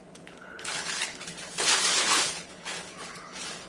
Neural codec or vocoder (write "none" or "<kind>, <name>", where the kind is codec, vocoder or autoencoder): codec, HILCodec